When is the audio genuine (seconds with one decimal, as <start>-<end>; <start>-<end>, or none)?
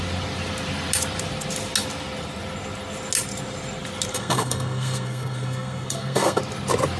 0.0-4.1; 6.4-7.0